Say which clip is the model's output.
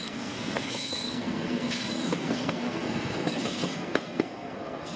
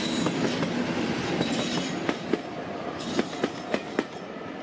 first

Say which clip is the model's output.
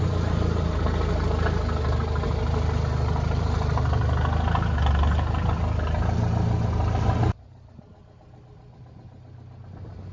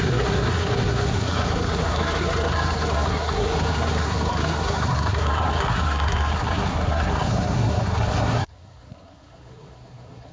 second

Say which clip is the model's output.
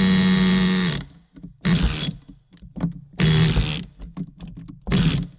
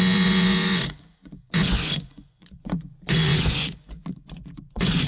second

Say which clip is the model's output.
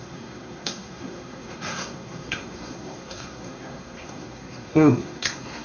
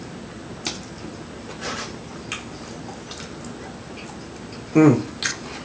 first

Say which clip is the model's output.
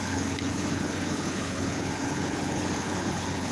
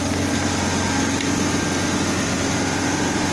first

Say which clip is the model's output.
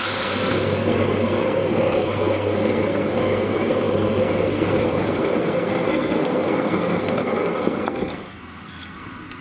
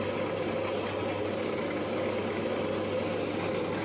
first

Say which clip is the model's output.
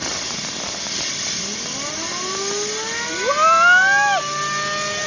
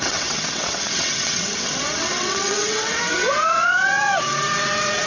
second